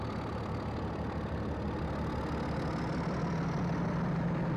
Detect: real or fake real